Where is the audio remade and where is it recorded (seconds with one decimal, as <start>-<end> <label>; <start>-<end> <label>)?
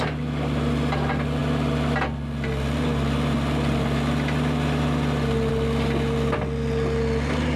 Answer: 0.0-7.6 recorded